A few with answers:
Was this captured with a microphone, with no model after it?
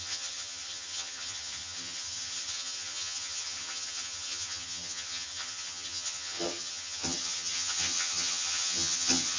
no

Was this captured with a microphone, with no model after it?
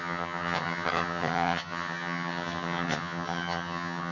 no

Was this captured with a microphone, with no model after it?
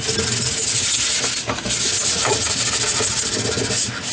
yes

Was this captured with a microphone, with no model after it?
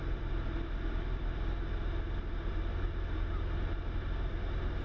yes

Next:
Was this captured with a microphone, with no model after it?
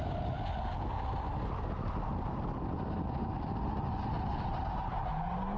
yes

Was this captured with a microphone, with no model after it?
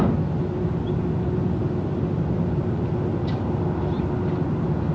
yes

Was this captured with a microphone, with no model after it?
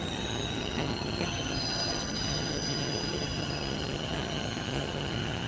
no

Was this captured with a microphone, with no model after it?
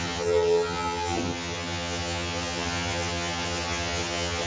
no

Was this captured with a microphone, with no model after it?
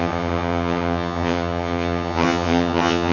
no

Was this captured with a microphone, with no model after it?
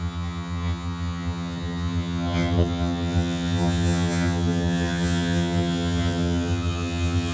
no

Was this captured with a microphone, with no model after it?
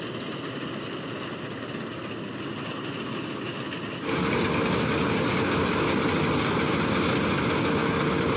yes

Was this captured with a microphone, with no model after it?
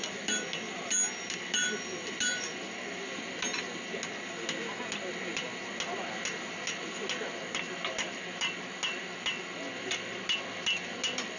yes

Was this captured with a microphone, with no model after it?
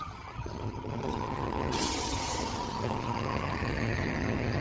no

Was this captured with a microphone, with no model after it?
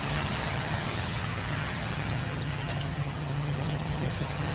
no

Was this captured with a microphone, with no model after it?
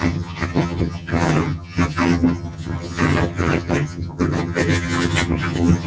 no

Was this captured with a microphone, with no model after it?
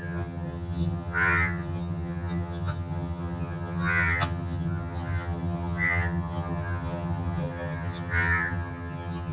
no